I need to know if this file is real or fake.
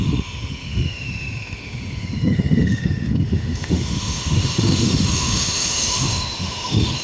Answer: fake